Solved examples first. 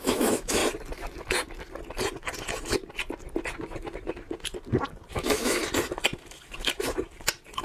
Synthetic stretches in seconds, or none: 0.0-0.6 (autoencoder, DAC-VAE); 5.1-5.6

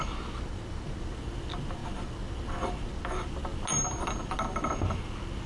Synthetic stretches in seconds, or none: none

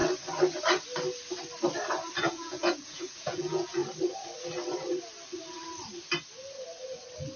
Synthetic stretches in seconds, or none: 2.2-3.8 (vocoder, Vocos)

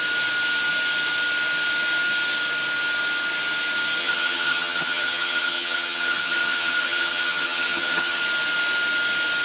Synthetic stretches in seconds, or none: 4.0-8.2 (vocoder, HiFi-GAN)

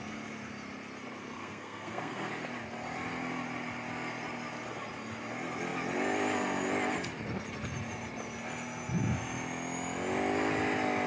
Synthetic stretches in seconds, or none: 1.4-2.3 (codec, SNAC)

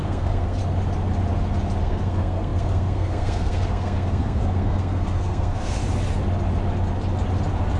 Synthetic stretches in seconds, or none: 0.0-0.6 (codec, SNAC); 1.8-5.8